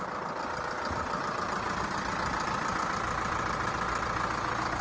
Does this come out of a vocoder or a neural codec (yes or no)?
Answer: no